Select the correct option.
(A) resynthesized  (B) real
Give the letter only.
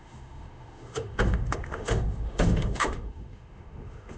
A